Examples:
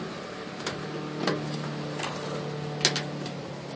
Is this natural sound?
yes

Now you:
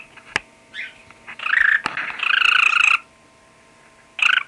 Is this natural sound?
yes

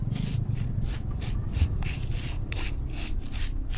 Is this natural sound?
yes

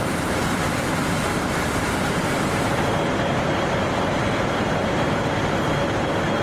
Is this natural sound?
no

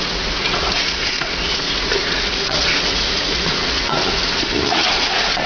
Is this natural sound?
no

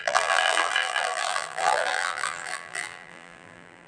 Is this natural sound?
no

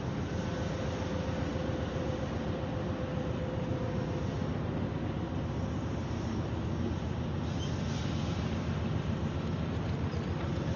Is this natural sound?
yes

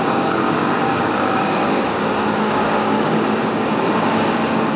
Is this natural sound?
no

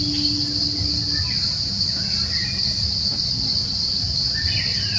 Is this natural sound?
yes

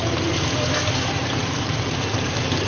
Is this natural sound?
no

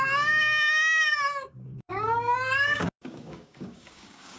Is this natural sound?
no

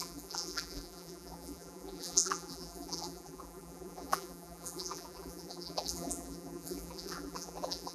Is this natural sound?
no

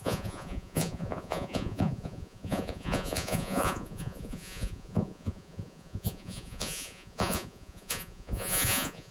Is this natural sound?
no